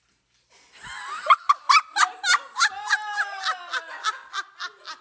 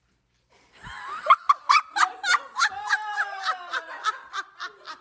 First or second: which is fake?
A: second